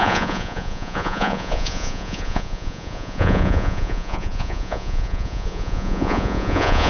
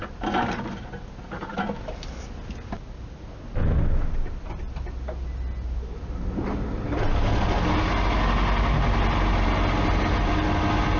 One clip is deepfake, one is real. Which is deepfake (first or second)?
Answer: first